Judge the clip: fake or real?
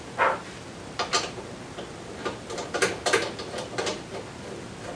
real